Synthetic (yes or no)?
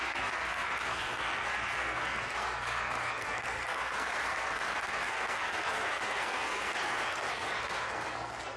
yes